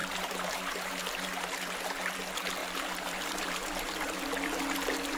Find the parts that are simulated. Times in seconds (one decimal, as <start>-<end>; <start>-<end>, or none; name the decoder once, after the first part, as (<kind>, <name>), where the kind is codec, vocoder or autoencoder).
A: 0.0-2.0 (vocoder, BigVGAN v2); 2.6-4.6